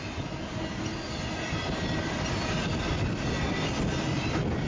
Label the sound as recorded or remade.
recorded